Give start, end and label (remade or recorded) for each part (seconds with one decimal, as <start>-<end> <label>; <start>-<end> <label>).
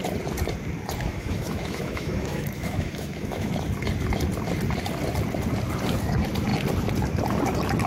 0.0-1.1 recorded; 1.1-3.5 remade; 3.5-7.9 recorded